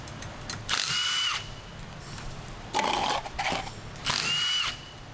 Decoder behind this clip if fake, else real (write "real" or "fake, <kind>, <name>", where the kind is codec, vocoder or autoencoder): real